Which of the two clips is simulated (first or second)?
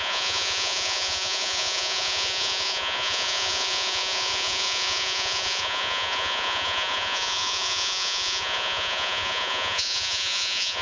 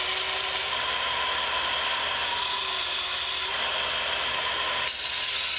first